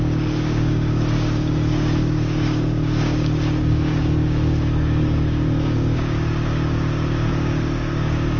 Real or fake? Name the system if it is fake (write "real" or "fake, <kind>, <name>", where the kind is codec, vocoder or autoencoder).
fake, codec, DAC